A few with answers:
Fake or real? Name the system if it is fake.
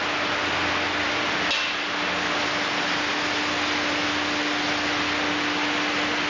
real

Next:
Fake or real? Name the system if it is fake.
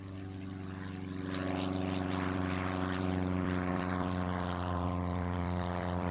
fake, vocoder, BigVGAN v2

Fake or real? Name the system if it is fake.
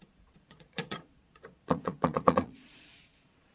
fake, vocoder, Vocos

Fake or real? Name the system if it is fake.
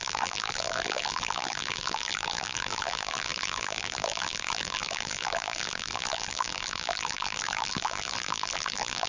fake, vocoder, BigVGAN v2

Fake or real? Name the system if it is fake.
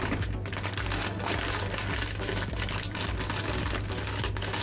real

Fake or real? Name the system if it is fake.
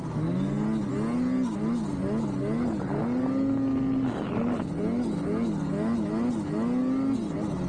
real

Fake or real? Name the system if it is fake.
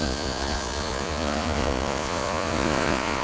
fake, vocoder, Vocos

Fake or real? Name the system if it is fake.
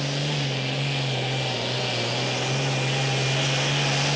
real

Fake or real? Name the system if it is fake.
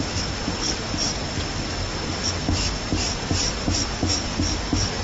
real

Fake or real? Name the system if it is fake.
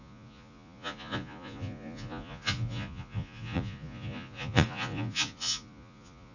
fake, vocoder, Vocos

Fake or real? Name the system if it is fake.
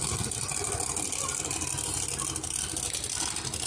real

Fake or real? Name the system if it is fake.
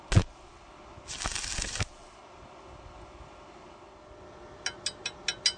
real